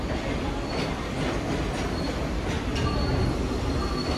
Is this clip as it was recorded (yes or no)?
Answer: yes